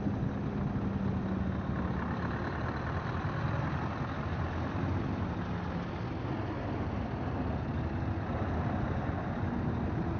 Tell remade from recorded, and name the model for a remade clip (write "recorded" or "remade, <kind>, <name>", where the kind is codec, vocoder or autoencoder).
recorded